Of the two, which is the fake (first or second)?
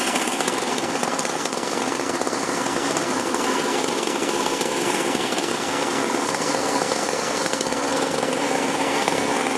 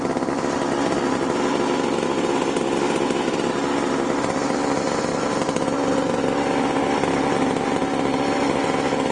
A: first